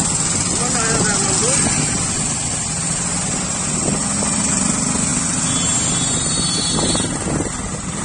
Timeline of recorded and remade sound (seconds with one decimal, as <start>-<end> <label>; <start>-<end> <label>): 0.0-8.0 recorded

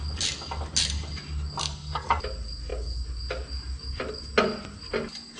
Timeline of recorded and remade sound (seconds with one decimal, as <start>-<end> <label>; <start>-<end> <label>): 0.0-1.6 recorded; 1.6-2.2 remade; 2.2-5.4 recorded